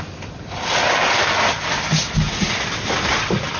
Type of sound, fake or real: real